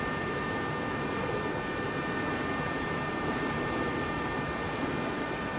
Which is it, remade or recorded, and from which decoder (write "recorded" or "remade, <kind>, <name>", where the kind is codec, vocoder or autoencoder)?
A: remade, vocoder, BigVGAN v2